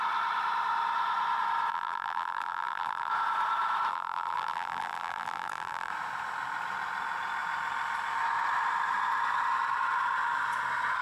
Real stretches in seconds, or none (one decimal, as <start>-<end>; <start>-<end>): 0.0-1.7; 3.1-3.9; 5.9-11.0